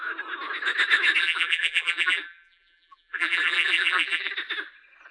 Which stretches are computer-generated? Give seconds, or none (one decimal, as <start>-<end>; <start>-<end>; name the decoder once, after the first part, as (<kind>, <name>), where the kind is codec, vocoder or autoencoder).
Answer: 1.2-4.3 (vocoder, BigVGAN v2)